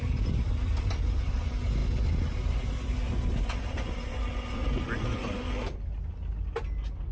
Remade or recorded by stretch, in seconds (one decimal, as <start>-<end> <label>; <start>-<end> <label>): 0.0-7.1 recorded

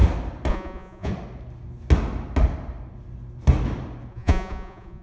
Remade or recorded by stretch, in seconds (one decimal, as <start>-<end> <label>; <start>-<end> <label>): 0.0-0.5 recorded; 0.5-1.1 remade; 1.1-4.1 recorded; 4.1-5.0 remade

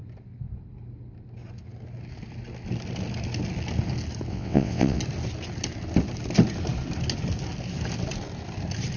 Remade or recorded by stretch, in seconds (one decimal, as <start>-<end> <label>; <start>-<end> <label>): 0.0-4.3 recorded; 4.3-5.0 remade; 5.0-9.0 recorded

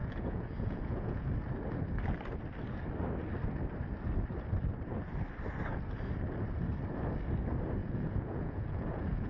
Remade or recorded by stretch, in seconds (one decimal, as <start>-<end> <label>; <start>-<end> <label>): 0.0-1.3 remade; 1.3-7.8 recorded; 7.8-9.3 remade